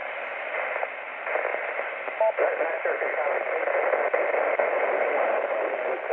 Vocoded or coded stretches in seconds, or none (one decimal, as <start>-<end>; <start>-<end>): none